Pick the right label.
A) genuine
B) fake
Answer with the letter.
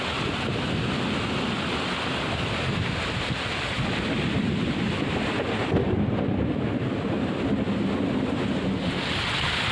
A